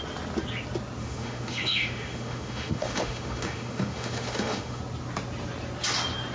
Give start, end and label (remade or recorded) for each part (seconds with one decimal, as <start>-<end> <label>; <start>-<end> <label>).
0.0-1.0 recorded; 1.0-4.8 remade; 4.8-6.3 recorded